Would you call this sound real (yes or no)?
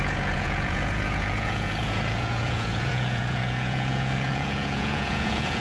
no